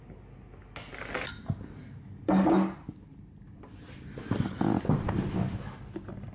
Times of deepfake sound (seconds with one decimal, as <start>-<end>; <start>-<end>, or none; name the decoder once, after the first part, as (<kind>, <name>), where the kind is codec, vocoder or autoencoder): none